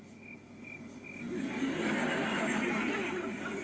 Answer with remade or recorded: recorded